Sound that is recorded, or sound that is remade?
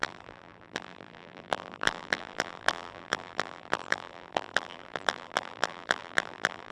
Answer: remade